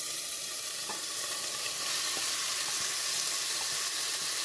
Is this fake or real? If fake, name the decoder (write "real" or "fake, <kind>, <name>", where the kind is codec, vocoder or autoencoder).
fake, vocoder, BigVGAN v2